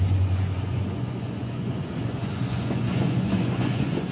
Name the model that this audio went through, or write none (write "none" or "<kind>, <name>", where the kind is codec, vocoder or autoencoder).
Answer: vocoder, Vocos